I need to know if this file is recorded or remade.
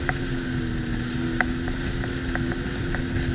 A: recorded